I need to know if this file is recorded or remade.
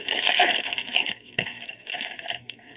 remade